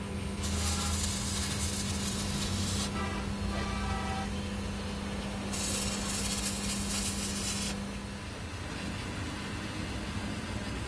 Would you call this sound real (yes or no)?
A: yes